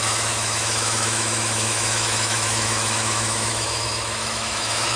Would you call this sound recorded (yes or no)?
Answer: no